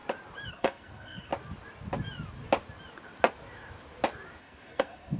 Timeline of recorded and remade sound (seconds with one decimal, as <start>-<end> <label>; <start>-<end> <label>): 0.0-0.5 recorded; 0.5-1.3 remade; 1.3-4.4 recorded; 4.4-5.2 remade